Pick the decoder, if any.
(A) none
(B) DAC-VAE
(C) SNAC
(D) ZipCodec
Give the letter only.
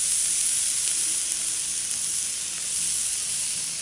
A